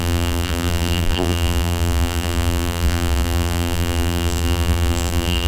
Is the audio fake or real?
fake